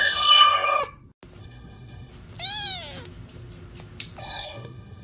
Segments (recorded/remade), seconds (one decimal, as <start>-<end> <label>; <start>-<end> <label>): 0.0-0.8 remade; 0.8-1.4 recorded; 1.4-2.1 remade; 2.1-4.2 recorded; 4.2-5.0 remade